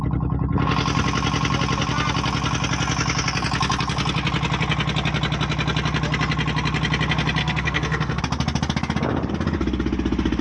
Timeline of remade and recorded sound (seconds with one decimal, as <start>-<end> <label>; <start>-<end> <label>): 0.0-7.4 recorded; 7.4-8.2 remade; 8.2-10.4 recorded